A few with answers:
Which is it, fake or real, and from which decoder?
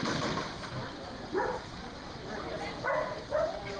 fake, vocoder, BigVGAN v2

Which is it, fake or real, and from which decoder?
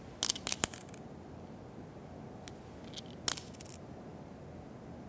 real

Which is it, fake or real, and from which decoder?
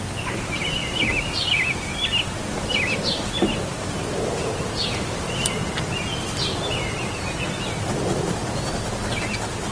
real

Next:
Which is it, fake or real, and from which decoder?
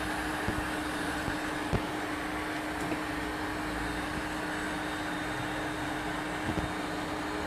real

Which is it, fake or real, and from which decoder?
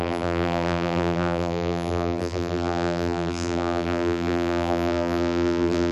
fake, vocoder, BigVGAN v2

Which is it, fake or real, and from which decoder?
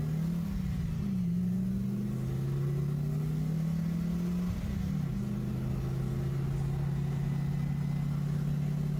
real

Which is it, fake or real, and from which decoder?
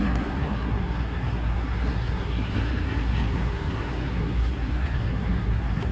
fake, codec, SNAC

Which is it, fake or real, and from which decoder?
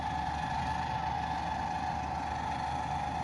real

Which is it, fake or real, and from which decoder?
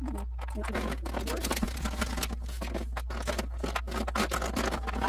real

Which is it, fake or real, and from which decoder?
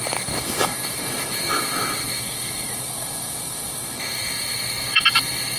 fake, autoencoder, DAC-VAE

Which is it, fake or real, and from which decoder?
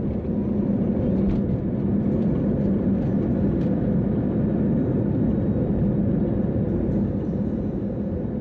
real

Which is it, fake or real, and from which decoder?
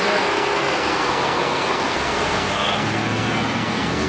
fake, codec, SNAC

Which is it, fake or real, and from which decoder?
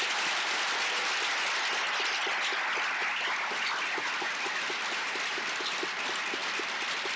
real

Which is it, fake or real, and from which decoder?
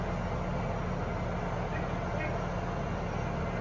real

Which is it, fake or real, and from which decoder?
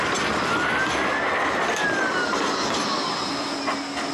real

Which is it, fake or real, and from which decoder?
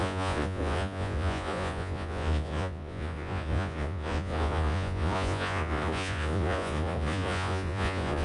fake, vocoder, Vocos